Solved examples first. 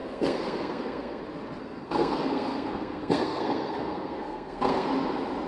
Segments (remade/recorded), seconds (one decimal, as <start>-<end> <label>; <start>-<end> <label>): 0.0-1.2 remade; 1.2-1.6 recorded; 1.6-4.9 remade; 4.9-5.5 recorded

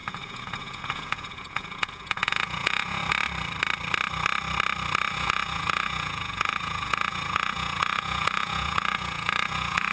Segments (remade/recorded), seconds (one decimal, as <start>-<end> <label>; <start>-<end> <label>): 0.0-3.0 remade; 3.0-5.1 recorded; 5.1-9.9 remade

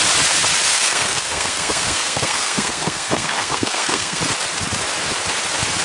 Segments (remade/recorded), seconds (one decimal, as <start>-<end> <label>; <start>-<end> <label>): 0.0-0.7 recorded; 0.7-4.2 remade; 4.2-5.8 recorded

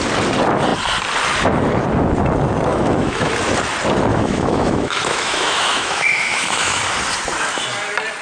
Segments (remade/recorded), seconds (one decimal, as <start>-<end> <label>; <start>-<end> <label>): 0.0-2.7 recorded; 2.7-3.3 remade; 3.3-4.1 recorded; 4.1-6.8 remade; 6.8-8.2 recorded

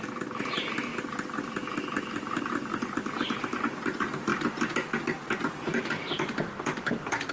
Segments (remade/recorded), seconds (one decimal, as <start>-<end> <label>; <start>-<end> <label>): 0.0-7.3 recorded

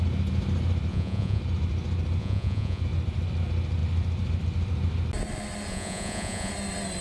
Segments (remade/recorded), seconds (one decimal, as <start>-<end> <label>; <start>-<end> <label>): 0.0-0.9 recorded; 0.9-1.4 remade; 1.4-2.2 recorded; 2.2-2.8 remade; 2.8-5.7 recorded; 5.7-6.5 remade; 6.5-7.0 recorded